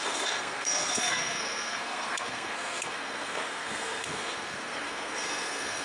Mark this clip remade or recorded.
remade